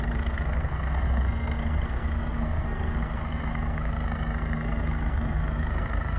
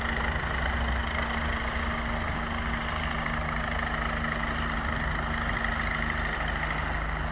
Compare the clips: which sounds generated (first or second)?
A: first